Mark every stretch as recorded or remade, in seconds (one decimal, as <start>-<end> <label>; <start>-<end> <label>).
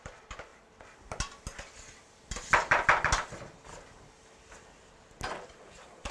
0.0-6.1 recorded